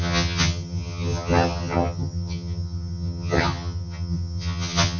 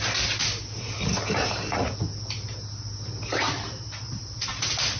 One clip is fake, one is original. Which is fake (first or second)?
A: first